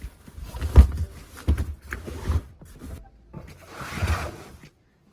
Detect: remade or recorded recorded